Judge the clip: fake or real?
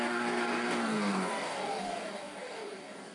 fake